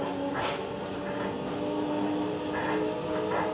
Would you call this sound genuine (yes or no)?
yes